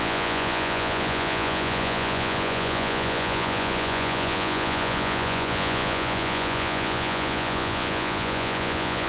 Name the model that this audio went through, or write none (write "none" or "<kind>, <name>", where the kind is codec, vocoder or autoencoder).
vocoder, Vocos